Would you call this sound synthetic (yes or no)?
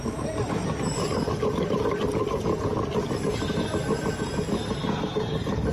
no